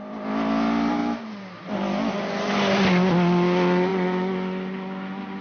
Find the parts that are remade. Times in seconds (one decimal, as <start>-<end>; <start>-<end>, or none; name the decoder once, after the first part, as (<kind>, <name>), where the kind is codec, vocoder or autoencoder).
none